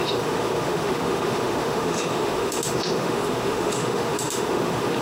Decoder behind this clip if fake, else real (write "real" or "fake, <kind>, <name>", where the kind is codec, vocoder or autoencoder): fake, autoencoder, DAC-VAE